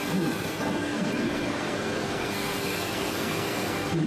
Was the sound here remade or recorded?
remade